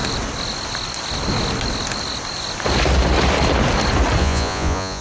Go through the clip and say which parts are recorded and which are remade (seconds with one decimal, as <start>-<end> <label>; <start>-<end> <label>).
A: 0.0-4.2 recorded; 4.2-5.0 remade